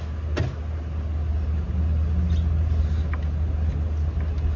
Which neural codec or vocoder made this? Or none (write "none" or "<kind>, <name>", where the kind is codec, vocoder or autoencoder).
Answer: none